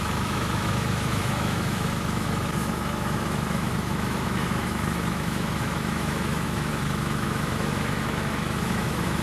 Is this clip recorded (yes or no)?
no